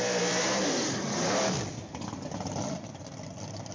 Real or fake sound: fake